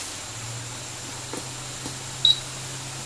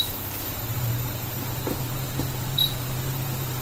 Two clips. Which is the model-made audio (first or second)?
second